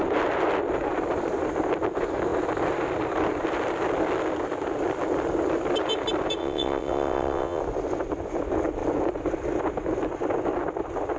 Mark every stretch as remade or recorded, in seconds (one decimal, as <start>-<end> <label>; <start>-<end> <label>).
0.0-6.4 recorded; 6.4-7.6 remade; 7.6-11.2 recorded